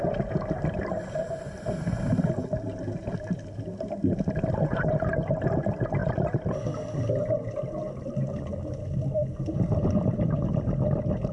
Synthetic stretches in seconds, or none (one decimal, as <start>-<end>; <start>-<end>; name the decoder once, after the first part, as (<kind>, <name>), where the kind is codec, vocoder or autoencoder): none

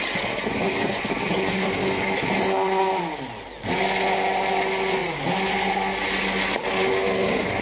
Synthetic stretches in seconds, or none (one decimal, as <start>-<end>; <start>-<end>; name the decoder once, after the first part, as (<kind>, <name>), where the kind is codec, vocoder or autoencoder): 0.4-1.0 (vocoder, Vocos)

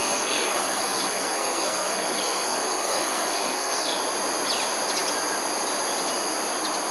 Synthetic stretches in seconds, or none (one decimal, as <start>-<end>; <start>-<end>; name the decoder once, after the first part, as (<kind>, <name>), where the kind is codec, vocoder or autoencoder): 0.0-4.0 (codec, SNAC)

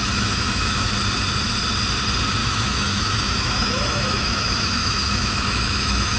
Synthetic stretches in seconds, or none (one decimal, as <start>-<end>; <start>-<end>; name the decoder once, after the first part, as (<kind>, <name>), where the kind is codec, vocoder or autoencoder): 0.0-0.9 (autoencoder, DAC-VAE); 2.4-6.2